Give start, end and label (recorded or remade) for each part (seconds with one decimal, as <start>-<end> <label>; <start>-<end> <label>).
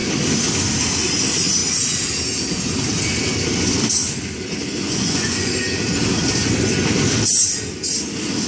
0.0-4.8 recorded; 4.8-5.5 remade; 5.5-8.5 recorded